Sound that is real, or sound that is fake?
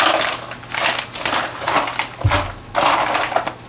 real